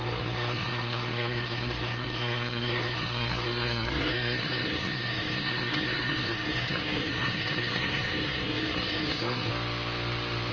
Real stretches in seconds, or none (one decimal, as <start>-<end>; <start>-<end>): 9.5-10.5